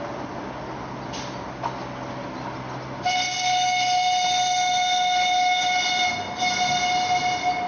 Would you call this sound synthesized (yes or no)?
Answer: no